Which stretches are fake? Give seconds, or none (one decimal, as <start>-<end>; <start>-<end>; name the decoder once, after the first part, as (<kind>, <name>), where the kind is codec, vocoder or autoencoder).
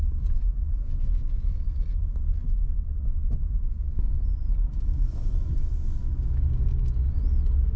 none